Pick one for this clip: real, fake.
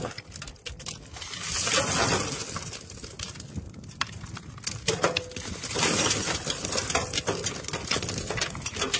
real